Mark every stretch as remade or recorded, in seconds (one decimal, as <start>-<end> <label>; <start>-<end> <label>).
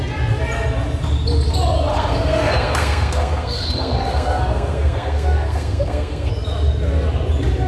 0.0-1.9 recorded; 1.9-6.3 remade; 6.3-7.7 recorded